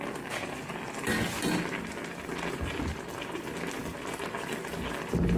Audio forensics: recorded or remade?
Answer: recorded